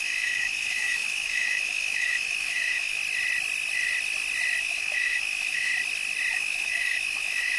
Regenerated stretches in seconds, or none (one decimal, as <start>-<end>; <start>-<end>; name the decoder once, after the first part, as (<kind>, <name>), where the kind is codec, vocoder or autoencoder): 0.0-3.0 (autoencoder, DAC-VAE); 4.6-5.7; 6.3-7.6